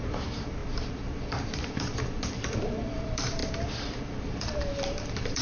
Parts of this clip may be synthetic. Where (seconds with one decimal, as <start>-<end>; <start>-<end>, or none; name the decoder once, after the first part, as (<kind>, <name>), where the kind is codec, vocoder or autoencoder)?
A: 0.0-3.4 (vocoder, BigVGAN v2); 4.2-5.4